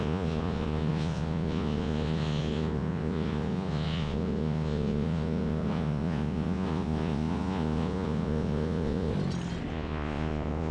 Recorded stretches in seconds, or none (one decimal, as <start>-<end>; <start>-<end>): 9.1-9.7